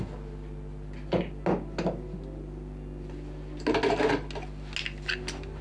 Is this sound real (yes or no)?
yes